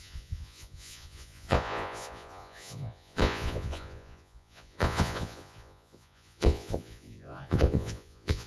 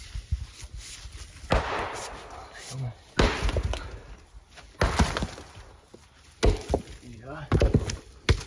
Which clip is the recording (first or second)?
second